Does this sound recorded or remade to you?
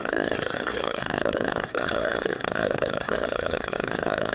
remade